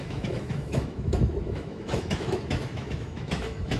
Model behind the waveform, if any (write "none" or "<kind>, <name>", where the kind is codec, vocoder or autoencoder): autoencoder, DAC-VAE